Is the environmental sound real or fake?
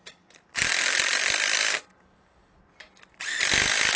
real